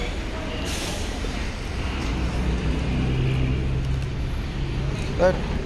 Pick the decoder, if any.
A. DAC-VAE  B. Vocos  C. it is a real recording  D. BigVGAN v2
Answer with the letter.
C